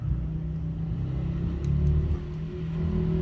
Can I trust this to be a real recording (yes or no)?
yes